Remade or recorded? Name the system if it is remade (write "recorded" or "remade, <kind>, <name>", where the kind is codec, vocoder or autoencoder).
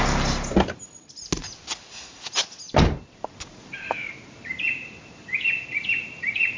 recorded